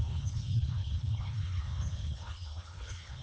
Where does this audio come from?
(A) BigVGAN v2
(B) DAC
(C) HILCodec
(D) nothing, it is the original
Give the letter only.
C